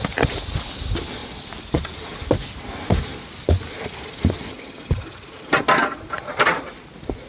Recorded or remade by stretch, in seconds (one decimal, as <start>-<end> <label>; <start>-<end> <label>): 0.0-7.3 recorded